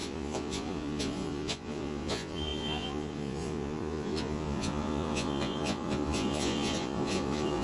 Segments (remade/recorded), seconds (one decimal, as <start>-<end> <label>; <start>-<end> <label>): 0.0-7.6 remade